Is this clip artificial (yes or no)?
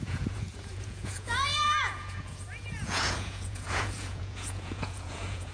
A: yes